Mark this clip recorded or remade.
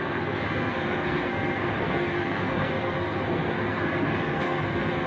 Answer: remade